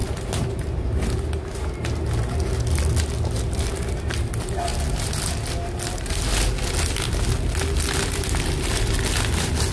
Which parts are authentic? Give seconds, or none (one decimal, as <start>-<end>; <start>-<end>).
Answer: 0.0-9.7